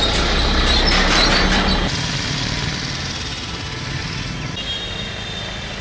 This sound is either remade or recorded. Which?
recorded